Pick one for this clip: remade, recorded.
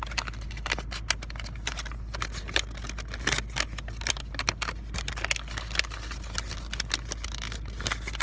recorded